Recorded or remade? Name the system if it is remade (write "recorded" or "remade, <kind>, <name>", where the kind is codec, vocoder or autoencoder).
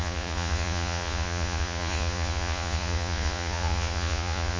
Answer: remade, vocoder, Vocos